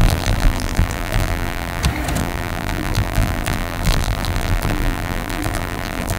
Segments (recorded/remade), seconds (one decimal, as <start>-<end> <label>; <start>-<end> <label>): 0.0-1.8 remade; 1.8-2.2 recorded; 2.2-6.2 remade